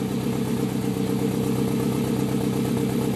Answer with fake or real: real